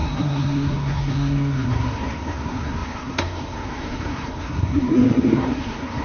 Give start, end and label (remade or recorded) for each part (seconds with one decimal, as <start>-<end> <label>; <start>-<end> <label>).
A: 0.0-6.0 remade